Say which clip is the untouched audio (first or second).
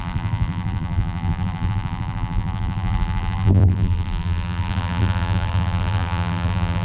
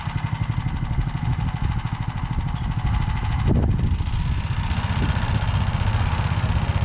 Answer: second